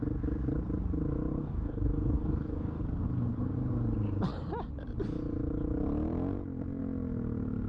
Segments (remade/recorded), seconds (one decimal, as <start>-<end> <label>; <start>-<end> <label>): 0.0-1.4 recorded; 1.4-2.8 remade; 2.8-7.7 recorded